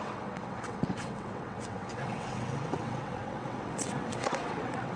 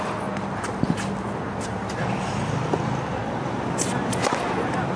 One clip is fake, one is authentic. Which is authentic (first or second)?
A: second